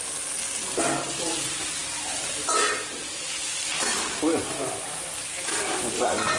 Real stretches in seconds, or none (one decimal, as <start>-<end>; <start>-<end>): 0.0-6.4